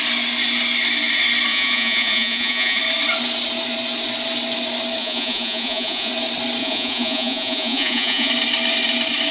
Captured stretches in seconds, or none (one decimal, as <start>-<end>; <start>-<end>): 0.0-1.5; 2.8-5.0; 6.1-6.6; 8.3-9.3

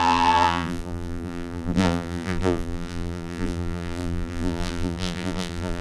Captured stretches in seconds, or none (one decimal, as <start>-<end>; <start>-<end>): none

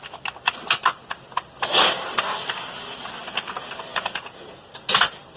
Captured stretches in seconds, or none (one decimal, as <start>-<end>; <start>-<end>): 0.0-3.9; 4.7-5.4

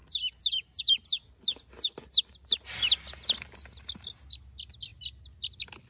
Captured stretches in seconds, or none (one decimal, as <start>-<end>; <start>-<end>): 0.0-5.9

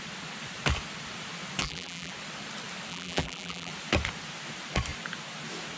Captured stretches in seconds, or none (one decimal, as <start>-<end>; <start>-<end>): 0.0-1.6; 2.1-2.9; 3.7-5.8